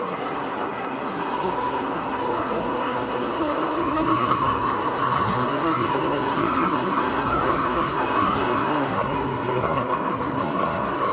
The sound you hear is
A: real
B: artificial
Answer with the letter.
B